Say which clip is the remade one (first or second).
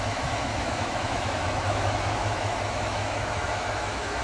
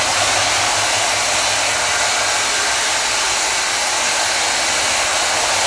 first